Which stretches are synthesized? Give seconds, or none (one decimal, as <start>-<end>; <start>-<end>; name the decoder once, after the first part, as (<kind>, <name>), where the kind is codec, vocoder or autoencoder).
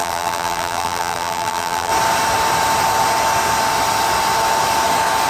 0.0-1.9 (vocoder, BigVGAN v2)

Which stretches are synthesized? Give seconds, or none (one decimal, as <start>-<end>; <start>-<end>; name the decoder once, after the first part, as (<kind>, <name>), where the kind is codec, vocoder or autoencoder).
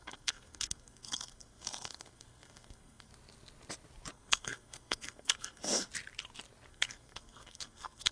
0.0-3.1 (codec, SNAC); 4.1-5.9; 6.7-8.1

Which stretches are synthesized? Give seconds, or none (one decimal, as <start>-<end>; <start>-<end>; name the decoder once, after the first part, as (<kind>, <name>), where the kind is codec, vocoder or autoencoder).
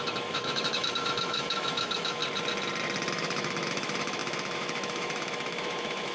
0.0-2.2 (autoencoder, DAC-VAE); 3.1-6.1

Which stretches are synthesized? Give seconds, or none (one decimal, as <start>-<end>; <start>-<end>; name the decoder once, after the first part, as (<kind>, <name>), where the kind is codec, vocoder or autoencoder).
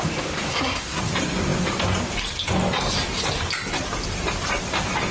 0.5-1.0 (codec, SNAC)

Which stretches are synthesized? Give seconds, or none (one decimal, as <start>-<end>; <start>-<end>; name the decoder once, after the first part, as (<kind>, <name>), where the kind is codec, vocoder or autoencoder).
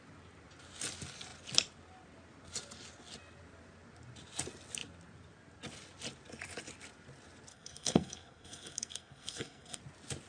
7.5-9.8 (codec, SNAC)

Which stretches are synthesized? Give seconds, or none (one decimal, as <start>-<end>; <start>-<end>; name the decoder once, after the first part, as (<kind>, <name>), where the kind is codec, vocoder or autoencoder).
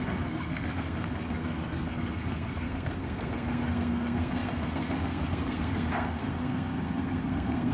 0.0-7.7 (codec, SNAC)